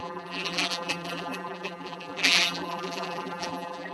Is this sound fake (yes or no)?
yes